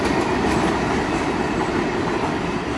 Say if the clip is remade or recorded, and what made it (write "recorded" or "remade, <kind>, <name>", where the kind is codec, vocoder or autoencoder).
recorded